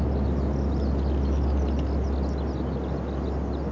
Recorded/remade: recorded